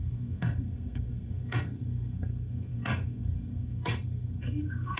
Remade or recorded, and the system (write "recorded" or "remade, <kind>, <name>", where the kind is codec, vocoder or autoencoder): remade, codec, SNAC